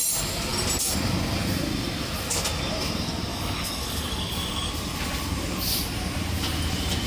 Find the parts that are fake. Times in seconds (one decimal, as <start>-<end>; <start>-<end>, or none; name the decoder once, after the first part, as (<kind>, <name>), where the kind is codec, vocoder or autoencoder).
3.3-4.7 (codec, DAC)